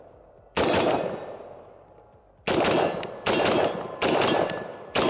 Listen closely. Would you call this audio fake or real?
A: fake